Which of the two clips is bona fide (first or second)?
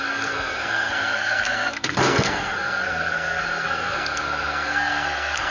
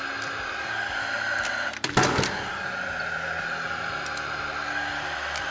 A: second